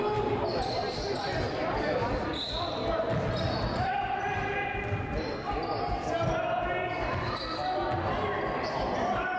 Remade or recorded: recorded